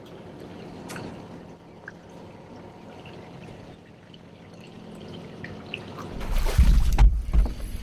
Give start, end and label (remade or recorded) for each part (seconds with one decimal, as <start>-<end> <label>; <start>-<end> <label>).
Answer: 0.0-0.5 recorded; 0.5-1.1 remade; 1.1-7.0 recorded; 7.0-7.8 remade